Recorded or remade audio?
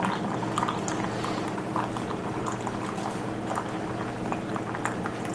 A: recorded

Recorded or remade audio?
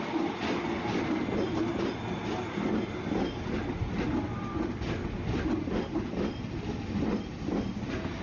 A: recorded